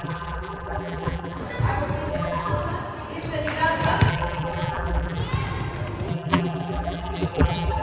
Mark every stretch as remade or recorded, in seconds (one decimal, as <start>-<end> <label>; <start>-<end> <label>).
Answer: 0.0-1.4 remade; 1.4-2.1 recorded; 2.1-2.5 remade; 2.5-4.1 recorded; 4.1-5.2 remade; 5.2-6.1 recorded; 6.1-7.8 remade